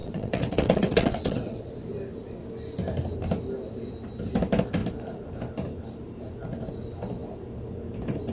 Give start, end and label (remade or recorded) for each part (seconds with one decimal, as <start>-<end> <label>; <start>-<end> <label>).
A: 0.0-1.6 remade; 1.6-8.3 recorded